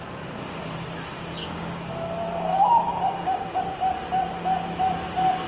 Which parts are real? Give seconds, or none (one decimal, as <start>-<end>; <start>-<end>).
0.0-1.4; 1.9-2.5; 3.6-5.5